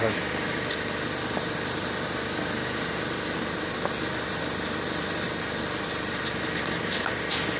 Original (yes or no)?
yes